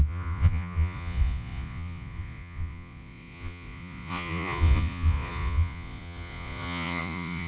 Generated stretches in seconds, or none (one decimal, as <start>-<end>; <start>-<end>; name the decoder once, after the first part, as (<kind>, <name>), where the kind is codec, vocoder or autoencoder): 0.0-7.5 (vocoder, Vocos)